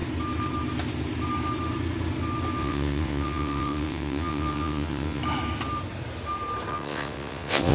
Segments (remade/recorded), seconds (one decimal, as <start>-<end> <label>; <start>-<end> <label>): 0.0-2.6 recorded; 2.6-5.2 remade; 5.2-6.7 recorded; 6.7-7.7 remade